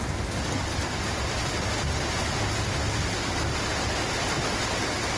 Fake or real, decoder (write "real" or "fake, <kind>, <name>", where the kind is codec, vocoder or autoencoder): real